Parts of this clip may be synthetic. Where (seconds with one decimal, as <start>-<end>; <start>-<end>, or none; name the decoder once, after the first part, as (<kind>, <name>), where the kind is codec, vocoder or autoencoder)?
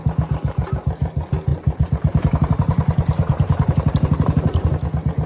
1.5-4.7 (vocoder, BigVGAN v2)